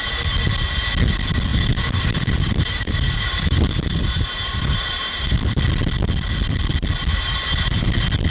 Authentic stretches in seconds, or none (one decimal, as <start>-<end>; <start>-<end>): 0.0-1.5; 5.6-7.1; 7.9-8.3